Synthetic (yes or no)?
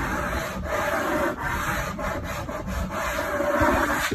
yes